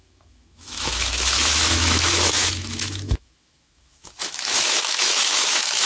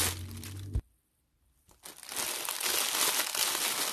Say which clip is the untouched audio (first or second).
second